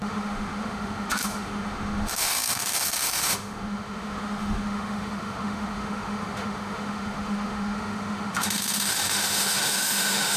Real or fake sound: fake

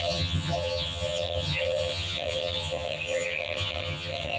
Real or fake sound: fake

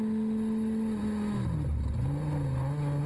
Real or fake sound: real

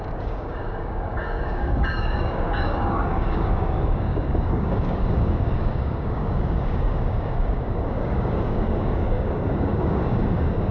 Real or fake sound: fake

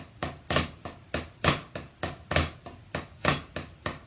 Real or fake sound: real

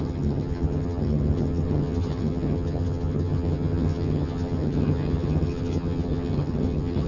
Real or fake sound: fake